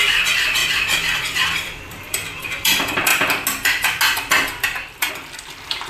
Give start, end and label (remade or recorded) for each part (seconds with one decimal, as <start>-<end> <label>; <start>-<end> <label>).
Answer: 0.0-3.1 remade; 3.1-5.1 recorded; 5.1-5.9 remade